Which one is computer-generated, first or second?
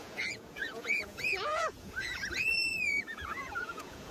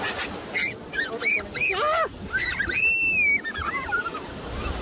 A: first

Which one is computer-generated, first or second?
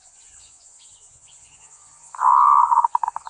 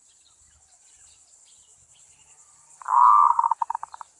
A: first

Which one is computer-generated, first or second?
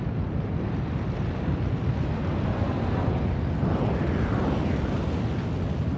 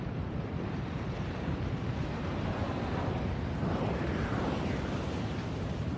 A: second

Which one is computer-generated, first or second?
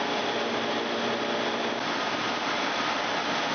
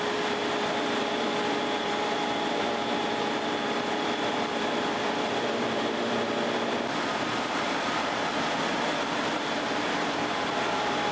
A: second